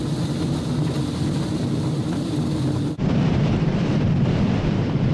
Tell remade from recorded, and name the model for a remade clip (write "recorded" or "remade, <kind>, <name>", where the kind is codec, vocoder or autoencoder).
remade, vocoder, BigVGAN v2